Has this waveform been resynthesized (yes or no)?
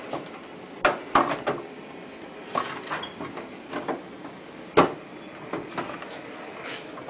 no